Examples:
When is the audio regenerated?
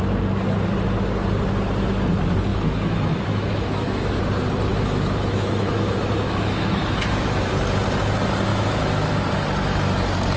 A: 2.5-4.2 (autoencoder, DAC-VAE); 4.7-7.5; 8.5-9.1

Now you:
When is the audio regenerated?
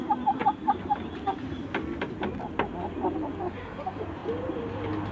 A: 0.0-0.4 (vocoder, BigVGAN v2); 3.5-4.2